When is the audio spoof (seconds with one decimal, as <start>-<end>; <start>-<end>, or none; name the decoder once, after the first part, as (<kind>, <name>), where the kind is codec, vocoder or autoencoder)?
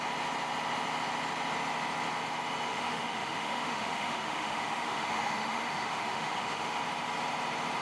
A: 2.7-6.8 (autoencoder, DAC-VAE)